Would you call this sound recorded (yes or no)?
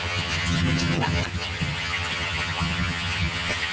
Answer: no